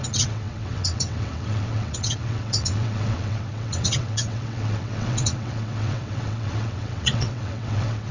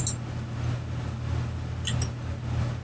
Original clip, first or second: second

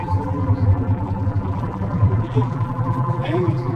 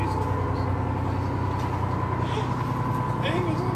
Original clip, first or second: second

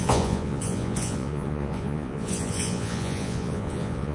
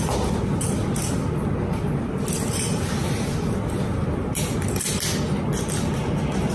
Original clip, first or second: second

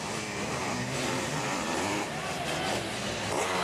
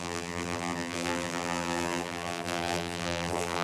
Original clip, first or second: first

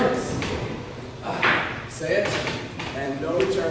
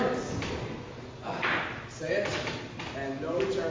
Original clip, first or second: second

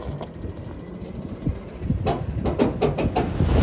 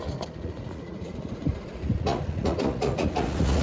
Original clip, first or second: first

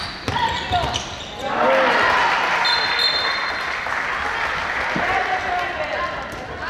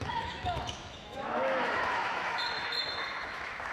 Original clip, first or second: first